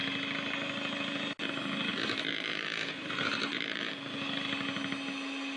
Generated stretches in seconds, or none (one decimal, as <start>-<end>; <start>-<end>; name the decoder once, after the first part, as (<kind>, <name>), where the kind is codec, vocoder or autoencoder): 1.9-3.9 (vocoder, BigVGAN v2)